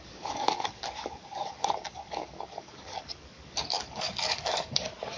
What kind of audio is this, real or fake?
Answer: fake